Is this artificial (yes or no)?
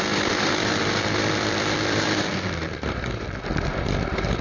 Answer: yes